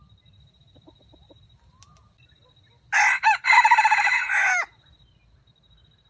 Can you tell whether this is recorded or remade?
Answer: recorded